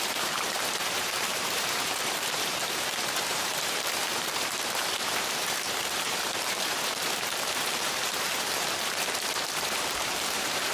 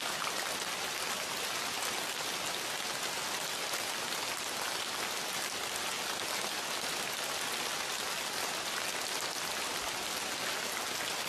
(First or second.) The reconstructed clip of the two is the first